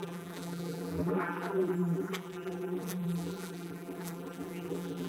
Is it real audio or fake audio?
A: fake